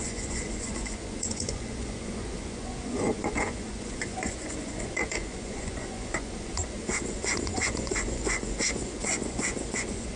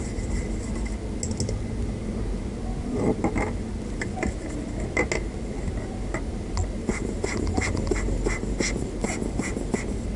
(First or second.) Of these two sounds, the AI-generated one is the first